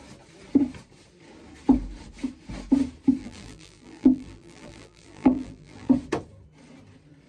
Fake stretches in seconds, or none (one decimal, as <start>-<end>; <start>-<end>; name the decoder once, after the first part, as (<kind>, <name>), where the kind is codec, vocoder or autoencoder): 3.2-5.9 (vocoder, BigVGAN v2)